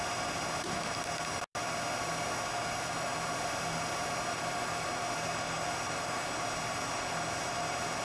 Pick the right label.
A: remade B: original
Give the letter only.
B